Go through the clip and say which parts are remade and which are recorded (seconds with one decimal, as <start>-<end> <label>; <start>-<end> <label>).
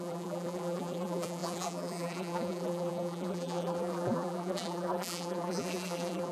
0.0-6.3 remade